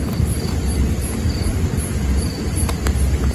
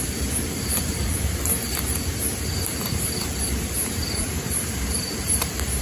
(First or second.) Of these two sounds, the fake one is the second